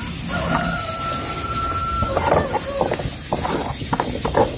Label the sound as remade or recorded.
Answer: recorded